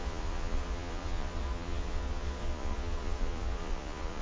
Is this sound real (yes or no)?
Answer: no